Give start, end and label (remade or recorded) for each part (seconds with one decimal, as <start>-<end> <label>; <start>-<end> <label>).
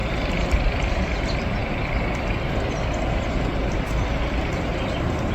0.0-5.3 recorded